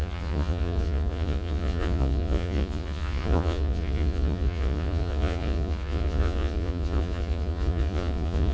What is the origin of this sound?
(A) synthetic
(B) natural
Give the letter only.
A